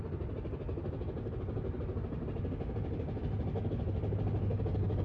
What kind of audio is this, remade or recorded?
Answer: recorded